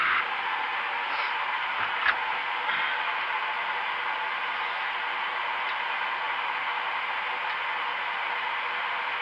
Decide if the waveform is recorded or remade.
recorded